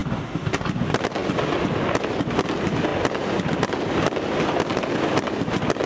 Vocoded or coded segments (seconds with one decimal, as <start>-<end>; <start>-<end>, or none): none